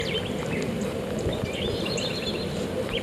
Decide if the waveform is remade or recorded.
recorded